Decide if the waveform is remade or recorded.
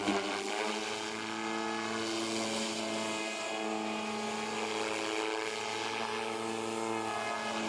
recorded